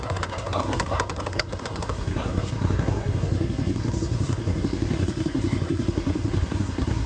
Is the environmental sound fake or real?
fake